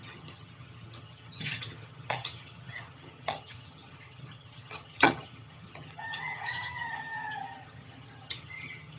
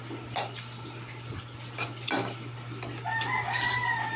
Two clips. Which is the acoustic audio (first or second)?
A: second